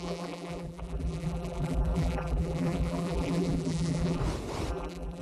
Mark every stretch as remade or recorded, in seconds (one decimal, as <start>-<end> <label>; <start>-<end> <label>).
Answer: 0.0-4.2 remade; 4.2-4.7 recorded; 4.7-5.2 remade